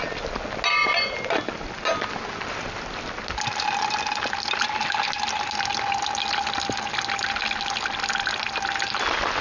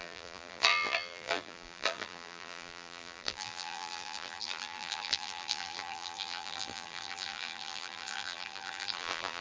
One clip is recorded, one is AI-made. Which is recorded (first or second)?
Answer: first